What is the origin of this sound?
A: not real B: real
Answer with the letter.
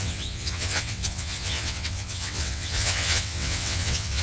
A